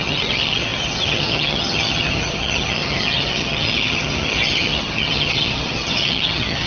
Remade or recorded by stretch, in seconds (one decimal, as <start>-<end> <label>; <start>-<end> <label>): 0.0-6.7 remade